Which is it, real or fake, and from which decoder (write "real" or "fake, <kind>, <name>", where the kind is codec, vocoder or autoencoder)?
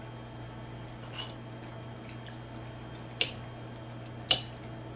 real